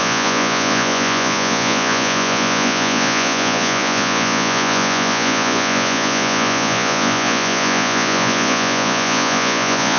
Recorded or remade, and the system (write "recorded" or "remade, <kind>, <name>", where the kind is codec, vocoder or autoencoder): remade, vocoder, Vocos